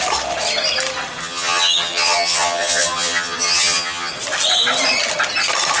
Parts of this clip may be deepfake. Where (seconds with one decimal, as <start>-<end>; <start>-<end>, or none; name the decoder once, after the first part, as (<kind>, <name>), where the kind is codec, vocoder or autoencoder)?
1.2-4.1 (vocoder, HiFi-GAN)